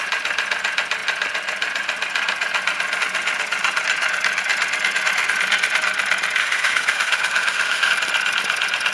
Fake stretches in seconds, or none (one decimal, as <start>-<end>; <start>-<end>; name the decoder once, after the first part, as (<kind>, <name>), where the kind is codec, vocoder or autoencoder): 6.4-7.9 (autoencoder, DAC-VAE)